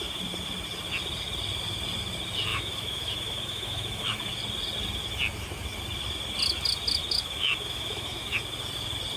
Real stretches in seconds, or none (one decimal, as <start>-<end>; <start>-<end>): 0.0-2.5; 4.4-7.0; 8.4-9.2